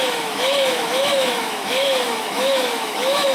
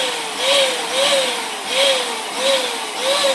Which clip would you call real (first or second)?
second